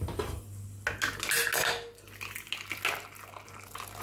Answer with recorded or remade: recorded